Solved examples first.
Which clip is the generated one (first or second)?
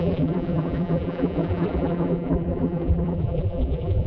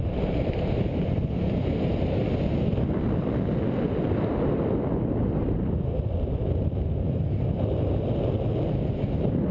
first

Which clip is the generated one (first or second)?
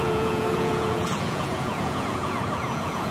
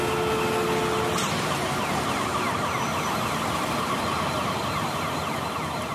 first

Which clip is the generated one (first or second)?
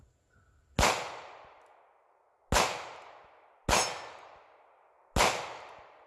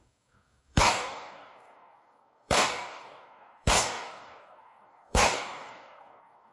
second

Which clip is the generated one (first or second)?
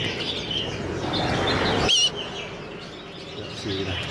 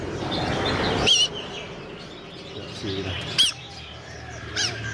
second